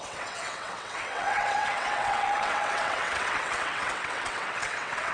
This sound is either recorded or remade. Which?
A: remade